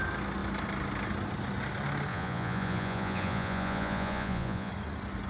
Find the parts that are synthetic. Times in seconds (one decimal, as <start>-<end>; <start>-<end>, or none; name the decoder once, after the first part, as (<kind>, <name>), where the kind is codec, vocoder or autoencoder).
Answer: 2.1-4.7 (vocoder, Vocos)